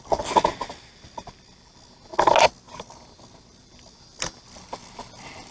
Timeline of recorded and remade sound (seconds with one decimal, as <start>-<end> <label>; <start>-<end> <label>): 0.0-5.5 recorded